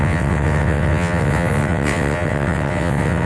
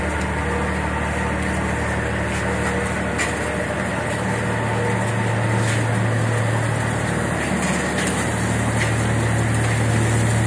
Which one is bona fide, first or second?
second